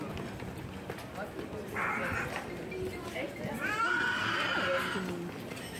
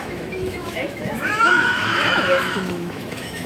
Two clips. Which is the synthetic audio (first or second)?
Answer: second